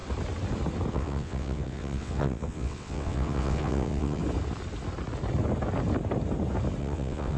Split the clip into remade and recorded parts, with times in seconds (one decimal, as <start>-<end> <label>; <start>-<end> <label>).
0.0-0.9 recorded; 0.9-4.2 remade; 4.2-6.8 recorded; 6.8-7.4 remade